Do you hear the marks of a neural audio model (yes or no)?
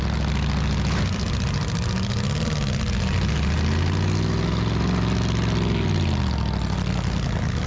no